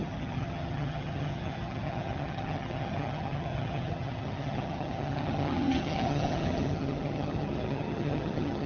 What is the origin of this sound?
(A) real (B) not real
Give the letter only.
B